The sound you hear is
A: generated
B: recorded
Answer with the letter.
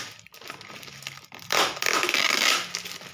B